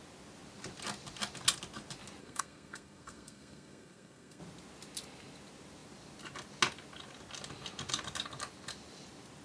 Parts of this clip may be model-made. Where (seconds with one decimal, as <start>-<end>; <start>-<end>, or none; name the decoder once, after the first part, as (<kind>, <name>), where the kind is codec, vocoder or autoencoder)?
2.2-4.4 (codec, SNAC)